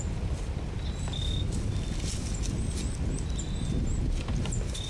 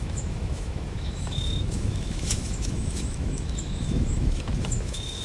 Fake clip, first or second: second